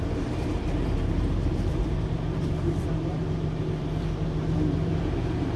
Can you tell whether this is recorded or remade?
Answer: remade